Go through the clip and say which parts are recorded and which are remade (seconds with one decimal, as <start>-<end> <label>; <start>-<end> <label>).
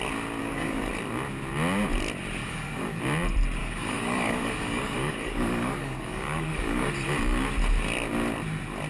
0.0-0.4 recorded; 0.4-0.9 remade; 0.9-2.4 recorded; 2.4-3.0 remade; 3.0-3.6 recorded; 3.6-6.9 remade; 6.9-8.9 recorded